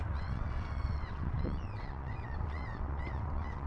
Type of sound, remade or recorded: remade